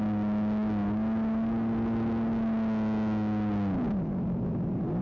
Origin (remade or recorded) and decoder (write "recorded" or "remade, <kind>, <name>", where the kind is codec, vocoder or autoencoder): recorded